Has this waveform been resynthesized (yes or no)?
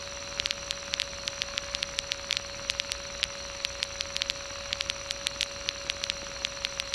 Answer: no